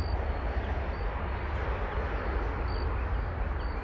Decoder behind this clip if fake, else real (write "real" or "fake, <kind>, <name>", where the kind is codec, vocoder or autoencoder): real